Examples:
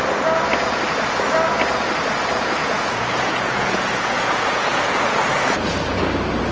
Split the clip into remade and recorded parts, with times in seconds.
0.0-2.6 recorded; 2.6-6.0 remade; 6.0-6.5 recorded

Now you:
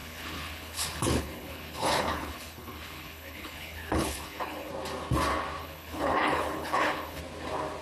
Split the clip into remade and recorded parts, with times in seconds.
0.0-4.7 remade; 4.7-5.6 recorded; 5.6-7.2 remade; 7.2-7.8 recorded

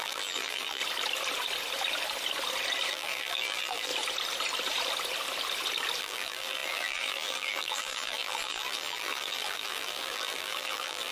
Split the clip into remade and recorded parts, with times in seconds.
0.0-0.8 remade; 0.8-2.9 recorded; 2.9-3.9 remade; 3.9-6.0 recorded; 6.0-11.1 remade

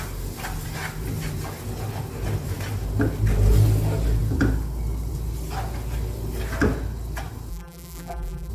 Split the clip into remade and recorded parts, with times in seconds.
0.0-7.5 recorded; 7.5-8.5 remade

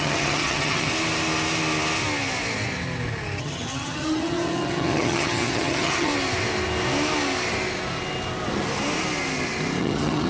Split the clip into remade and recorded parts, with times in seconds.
0.0-0.9 remade; 0.9-3.4 recorded; 3.4-6.1 remade; 6.1-9.8 recorded; 9.8-10.3 remade

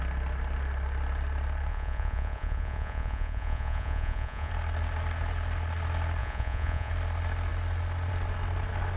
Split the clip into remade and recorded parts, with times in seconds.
0.0-1.7 recorded; 1.7-4.5 remade; 4.5-6.2 recorded; 6.2-6.9 remade; 6.9-9.0 recorded